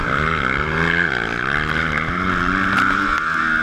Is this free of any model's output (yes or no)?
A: yes